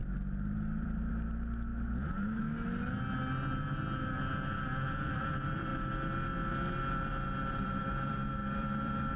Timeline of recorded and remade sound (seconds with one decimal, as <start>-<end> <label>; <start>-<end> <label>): 0.0-1.7 remade; 1.7-4.9 recorded; 4.9-5.7 remade; 5.7-7.6 recorded; 7.6-9.2 remade